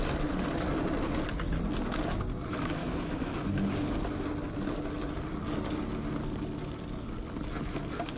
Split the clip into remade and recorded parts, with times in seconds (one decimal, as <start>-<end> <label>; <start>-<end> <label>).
0.0-2.8 recorded; 2.8-3.3 remade; 3.3-8.2 recorded

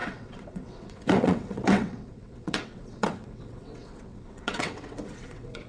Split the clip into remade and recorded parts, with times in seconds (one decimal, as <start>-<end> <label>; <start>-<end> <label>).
0.0-5.7 remade